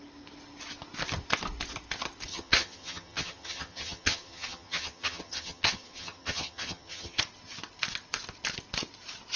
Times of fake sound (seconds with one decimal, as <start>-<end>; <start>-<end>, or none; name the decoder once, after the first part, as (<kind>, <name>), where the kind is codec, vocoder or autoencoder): 2.3-7.2 (vocoder, HiFi-GAN)

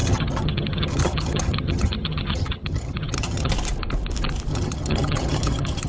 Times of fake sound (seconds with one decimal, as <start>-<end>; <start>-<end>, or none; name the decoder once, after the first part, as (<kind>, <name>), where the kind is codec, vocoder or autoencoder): 0.0-3.5 (vocoder, HiFi-GAN); 4.5-5.9

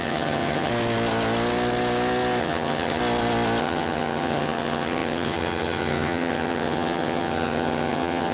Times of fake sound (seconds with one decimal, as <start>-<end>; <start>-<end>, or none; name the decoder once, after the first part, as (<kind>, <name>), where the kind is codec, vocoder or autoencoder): 0.0-0.7 (vocoder, HiFi-GAN); 2.4-3.0; 3.6-8.3

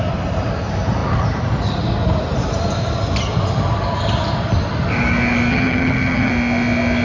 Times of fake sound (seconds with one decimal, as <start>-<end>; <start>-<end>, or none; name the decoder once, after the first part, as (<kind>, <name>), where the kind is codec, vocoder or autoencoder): 5.5-6.3 (vocoder, HiFi-GAN)